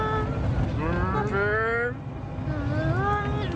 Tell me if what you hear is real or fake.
real